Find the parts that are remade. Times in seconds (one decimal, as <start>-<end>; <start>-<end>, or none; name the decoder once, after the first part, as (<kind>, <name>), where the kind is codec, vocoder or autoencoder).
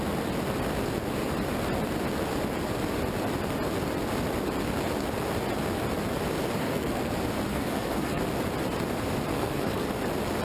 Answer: 6.6-7.1 (codec, SNAC); 7.5-8.2; 9.3-9.9